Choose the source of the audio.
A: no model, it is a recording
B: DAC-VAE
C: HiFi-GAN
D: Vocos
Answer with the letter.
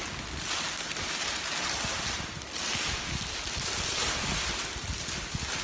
A